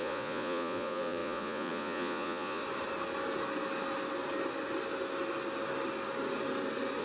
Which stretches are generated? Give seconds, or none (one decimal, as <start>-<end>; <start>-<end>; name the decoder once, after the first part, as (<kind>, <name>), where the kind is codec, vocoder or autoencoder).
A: 0.0-2.6 (vocoder, Vocos)

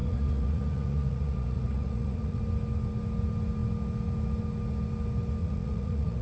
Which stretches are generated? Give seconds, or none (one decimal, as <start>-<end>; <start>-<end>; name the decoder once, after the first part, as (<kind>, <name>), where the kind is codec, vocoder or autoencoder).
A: 0.0-2.4 (vocoder, Vocos); 5.4-6.2

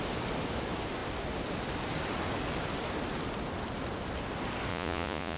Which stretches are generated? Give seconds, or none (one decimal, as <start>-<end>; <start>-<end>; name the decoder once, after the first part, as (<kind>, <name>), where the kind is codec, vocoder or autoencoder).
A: 4.7-5.4 (vocoder, Vocos)

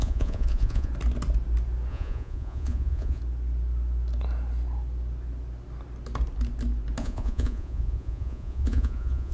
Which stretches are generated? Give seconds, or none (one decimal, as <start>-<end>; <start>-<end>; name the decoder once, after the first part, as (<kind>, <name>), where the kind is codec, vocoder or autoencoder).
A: 0.0-0.9 (vocoder, Vocos); 1.9-3.2; 7.0-9.3

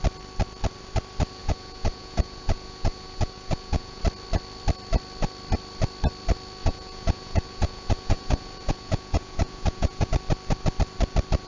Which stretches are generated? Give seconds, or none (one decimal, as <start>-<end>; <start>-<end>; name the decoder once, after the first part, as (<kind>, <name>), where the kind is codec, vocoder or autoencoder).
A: 1.4-4.0 (vocoder, Vocos); 6.6-10.1

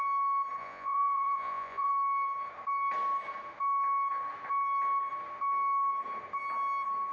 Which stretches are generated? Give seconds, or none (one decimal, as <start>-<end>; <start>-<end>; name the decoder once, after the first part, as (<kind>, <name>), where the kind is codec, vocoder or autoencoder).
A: 0.6-1.9 (vocoder, Vocos)

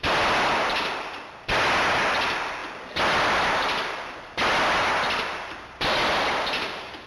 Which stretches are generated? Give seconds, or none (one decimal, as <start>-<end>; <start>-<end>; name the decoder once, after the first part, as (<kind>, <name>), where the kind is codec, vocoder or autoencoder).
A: none

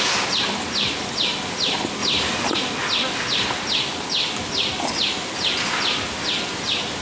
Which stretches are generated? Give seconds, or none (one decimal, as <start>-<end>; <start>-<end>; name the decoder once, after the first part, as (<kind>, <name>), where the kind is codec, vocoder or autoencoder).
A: none